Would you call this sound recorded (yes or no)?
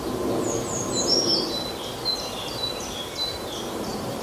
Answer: no